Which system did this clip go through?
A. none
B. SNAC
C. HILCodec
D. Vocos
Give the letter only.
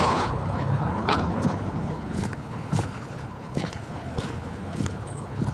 C